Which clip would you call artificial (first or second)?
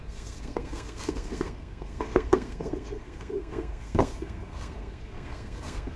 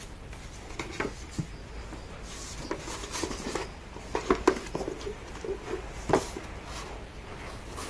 first